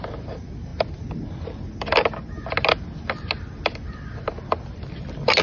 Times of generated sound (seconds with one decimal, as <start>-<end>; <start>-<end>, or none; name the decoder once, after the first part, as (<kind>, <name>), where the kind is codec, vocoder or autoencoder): none